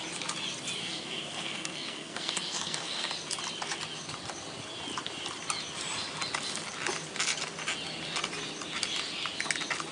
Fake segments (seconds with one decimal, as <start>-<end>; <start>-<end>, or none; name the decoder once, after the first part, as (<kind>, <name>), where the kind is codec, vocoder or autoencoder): 0.8-3.1 (codec, SNAC)